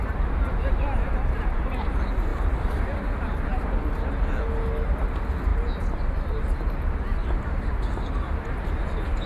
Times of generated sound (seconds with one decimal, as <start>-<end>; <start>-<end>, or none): 2.3-2.8; 7.2-7.7